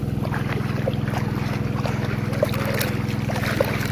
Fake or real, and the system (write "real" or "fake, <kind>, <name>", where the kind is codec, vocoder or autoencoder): real